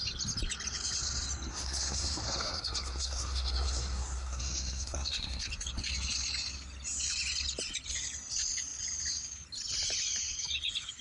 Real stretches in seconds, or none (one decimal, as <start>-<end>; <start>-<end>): 0.0-1.5; 5.5-11.0